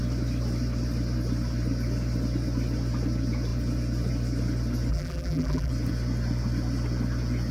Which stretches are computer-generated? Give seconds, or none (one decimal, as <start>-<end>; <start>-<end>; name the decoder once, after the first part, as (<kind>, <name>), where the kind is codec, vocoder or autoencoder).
4.9-5.7 (vocoder, BigVGAN v2)